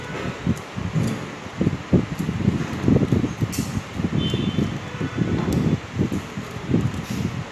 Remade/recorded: recorded